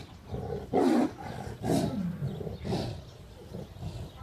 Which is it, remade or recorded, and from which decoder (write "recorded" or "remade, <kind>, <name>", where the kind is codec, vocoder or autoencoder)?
recorded